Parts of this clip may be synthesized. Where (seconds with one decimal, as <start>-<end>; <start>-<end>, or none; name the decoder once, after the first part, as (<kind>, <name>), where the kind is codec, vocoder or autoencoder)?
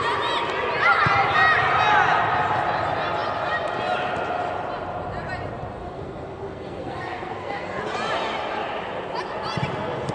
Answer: 5.8-7.8 (codec, SNAC)